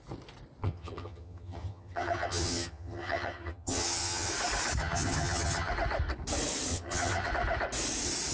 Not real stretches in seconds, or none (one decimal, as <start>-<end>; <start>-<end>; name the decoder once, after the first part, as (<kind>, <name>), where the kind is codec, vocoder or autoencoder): 0.6-4.3 (vocoder, HiFi-GAN); 4.8-5.7; 6.7-7.3